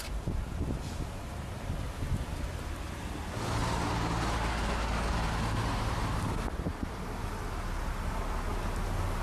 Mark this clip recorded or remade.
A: recorded